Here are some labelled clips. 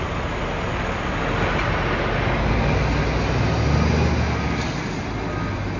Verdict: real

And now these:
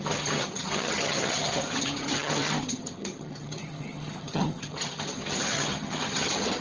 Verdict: fake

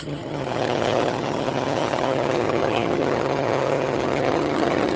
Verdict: fake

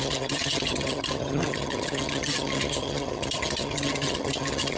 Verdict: fake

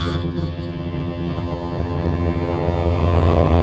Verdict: fake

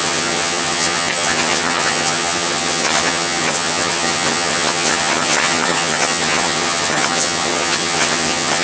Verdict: fake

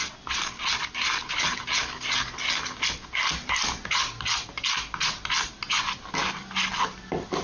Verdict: real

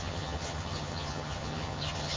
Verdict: fake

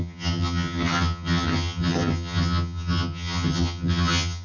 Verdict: fake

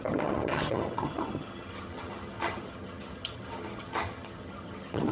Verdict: fake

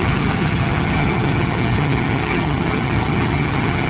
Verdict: fake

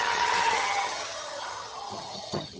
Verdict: fake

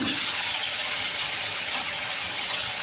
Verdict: fake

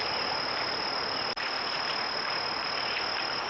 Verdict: real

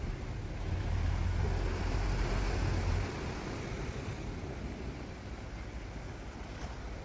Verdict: real